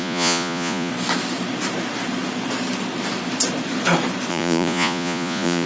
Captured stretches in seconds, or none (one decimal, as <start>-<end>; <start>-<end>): 0.9-4.3